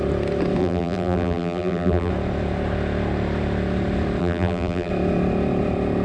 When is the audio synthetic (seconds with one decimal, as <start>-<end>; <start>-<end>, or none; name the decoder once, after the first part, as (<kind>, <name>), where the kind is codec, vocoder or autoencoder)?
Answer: 0.6-2.1 (vocoder, BigVGAN v2); 4.2-4.9